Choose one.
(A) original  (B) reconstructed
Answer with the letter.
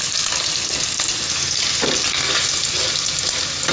A